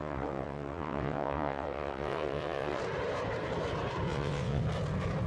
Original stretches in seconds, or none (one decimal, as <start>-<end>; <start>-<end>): 2.8-4.1; 4.6-5.3